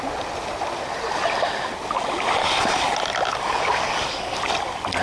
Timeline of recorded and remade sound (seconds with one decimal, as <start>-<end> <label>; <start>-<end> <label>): 0.0-2.4 recorded; 2.4-2.9 remade; 2.9-3.3 recorded; 3.3-4.4 remade; 4.4-5.0 recorded